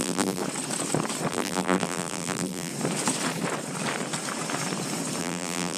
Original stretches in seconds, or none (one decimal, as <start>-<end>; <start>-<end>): 0.4-1.3; 2.7-5.2